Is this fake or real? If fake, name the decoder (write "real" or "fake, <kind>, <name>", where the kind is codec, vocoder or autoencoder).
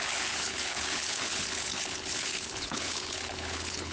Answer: fake, codec, HILCodec